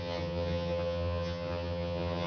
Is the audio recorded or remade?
remade